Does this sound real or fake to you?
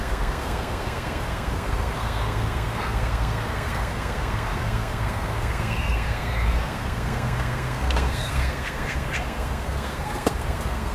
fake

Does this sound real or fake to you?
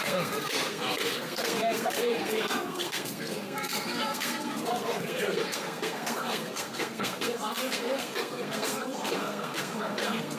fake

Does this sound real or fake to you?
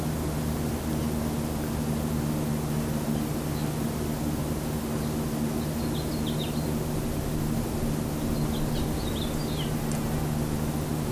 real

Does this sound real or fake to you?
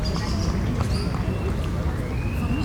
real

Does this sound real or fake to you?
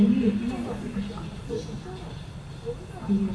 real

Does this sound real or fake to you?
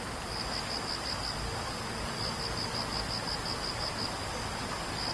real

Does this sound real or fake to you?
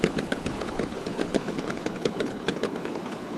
fake